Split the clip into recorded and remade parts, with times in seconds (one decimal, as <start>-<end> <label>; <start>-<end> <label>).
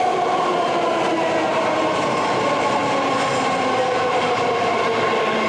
0.0-5.5 recorded